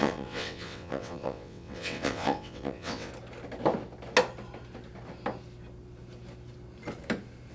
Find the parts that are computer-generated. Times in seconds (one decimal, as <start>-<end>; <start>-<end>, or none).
0.0-3.1